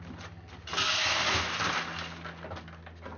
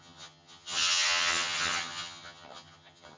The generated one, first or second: second